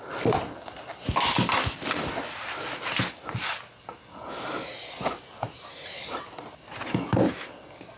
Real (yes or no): yes